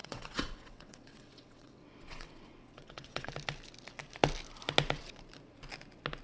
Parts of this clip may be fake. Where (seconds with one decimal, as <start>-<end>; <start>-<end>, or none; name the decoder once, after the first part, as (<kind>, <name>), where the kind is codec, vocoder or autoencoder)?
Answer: 0.0-3.3 (vocoder, WaveNeXt)